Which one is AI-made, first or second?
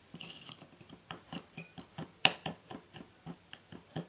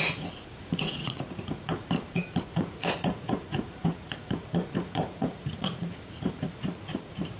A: second